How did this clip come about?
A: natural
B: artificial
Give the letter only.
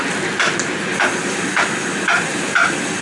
A